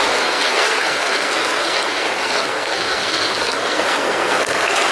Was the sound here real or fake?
fake